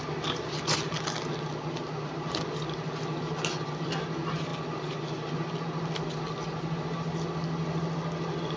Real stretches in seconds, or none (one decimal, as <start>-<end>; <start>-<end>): 0.0-8.6